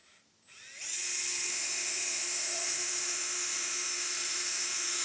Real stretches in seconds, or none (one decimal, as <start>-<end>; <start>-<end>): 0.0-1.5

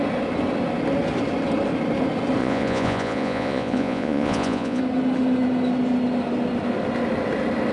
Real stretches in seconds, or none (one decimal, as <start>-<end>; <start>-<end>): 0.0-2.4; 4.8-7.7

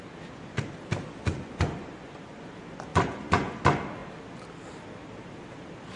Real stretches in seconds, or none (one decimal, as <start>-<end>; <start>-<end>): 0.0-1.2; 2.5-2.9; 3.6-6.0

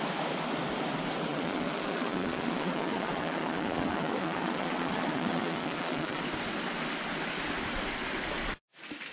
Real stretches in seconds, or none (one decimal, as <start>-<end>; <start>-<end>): 0.0-1.3; 6.2-9.1

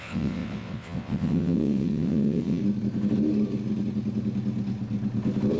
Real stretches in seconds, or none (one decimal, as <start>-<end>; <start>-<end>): 2.6-5.6